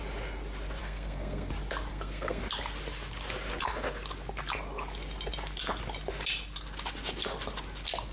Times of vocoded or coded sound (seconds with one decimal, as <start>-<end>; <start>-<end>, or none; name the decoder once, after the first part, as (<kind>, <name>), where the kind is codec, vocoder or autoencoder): 0.8-1.5 (codec, SNAC); 1.9-2.4